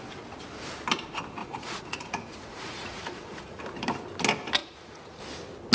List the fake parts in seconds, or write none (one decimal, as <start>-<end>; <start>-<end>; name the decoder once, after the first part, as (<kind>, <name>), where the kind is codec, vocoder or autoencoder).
1.4-3.6 (vocoder, Vocos); 4.6-5.2